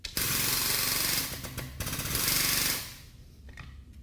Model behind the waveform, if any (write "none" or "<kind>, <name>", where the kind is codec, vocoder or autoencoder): none